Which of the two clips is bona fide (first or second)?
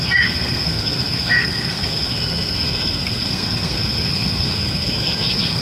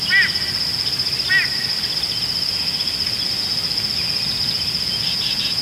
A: second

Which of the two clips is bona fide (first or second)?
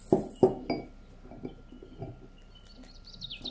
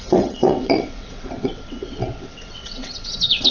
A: first